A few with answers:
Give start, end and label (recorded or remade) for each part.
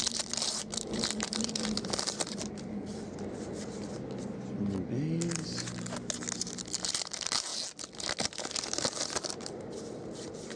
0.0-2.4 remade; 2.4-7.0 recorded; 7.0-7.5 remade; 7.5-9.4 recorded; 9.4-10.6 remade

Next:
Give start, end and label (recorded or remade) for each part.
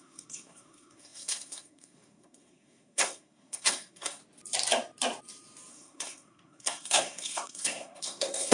0.0-4.2 remade; 4.2-5.7 recorded; 5.7-8.5 remade